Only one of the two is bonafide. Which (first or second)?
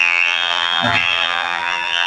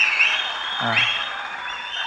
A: second